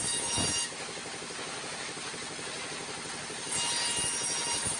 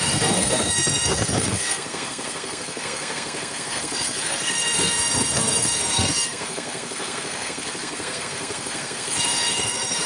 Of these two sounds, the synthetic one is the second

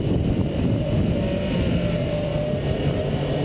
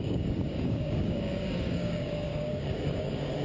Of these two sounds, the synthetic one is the second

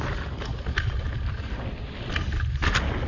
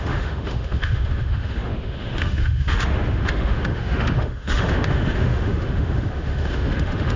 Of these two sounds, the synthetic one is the second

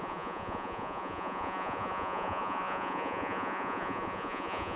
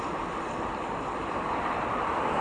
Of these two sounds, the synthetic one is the first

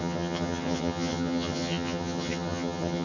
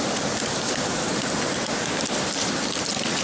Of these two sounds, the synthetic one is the first